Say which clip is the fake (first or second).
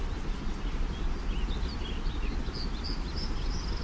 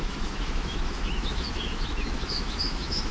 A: second